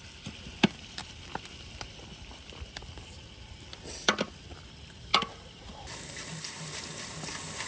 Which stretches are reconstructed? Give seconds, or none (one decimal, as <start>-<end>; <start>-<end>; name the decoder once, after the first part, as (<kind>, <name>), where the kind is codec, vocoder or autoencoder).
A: none